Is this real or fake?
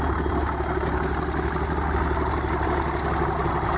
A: real